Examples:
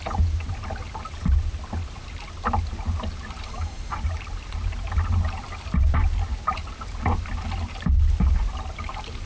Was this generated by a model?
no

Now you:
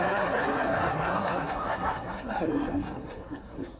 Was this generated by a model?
yes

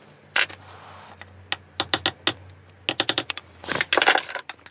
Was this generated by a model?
no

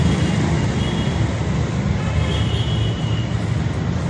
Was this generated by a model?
no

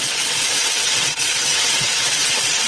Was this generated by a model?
yes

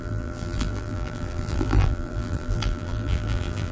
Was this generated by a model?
yes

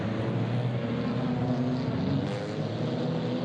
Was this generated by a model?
no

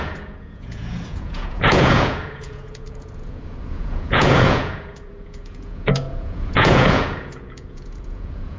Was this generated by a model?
yes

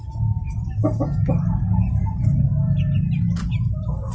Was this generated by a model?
no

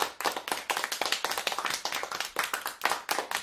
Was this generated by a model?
no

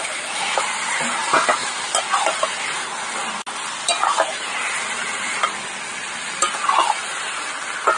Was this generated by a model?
no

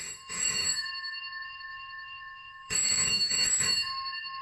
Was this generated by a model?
yes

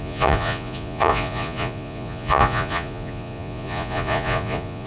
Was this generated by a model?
yes